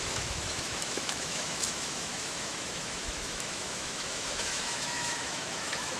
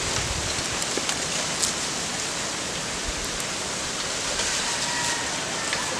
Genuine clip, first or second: second